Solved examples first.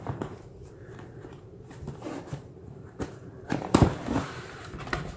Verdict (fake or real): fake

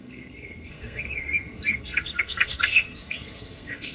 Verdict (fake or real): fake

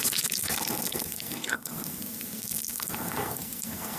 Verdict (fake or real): fake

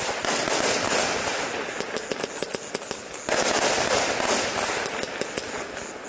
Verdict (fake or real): real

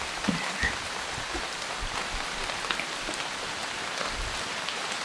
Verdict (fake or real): fake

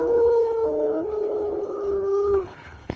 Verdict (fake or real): fake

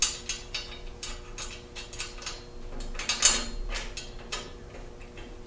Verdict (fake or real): real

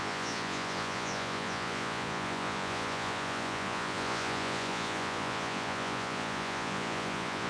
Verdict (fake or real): fake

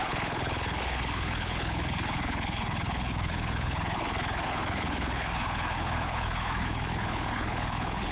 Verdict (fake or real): fake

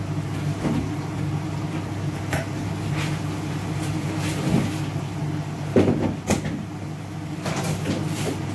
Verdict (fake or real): real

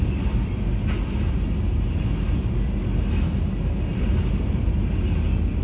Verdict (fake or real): real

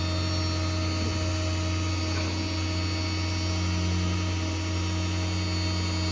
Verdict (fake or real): real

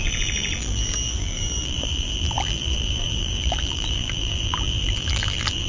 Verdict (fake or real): fake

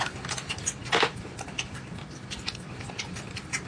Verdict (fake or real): real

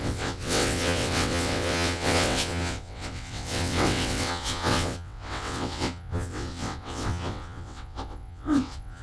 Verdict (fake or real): fake